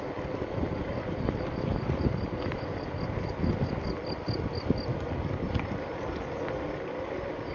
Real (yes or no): yes